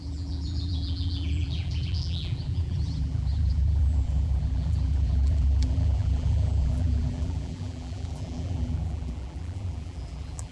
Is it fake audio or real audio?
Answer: fake